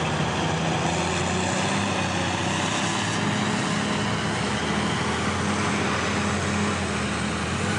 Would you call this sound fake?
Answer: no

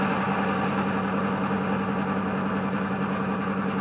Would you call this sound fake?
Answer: no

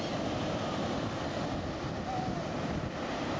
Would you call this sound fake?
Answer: no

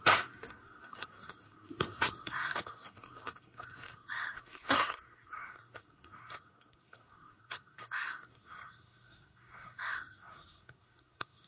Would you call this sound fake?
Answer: yes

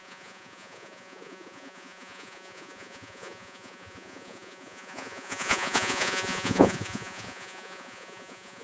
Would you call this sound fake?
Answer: yes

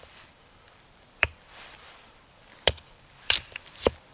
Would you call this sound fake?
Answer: yes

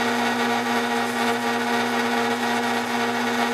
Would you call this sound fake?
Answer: no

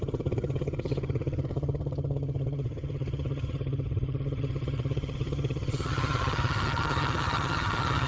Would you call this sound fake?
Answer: yes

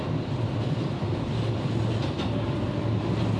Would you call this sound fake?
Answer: no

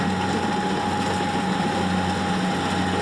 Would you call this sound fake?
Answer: no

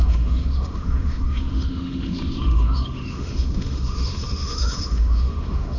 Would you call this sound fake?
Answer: yes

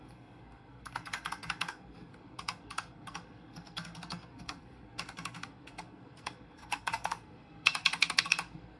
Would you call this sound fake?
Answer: yes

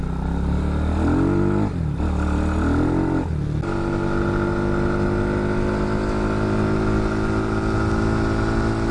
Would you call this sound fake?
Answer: no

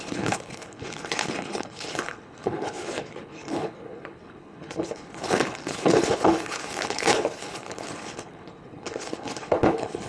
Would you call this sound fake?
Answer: yes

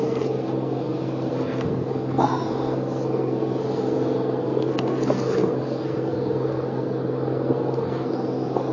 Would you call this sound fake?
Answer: yes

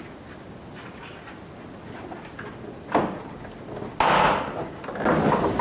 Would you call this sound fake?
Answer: no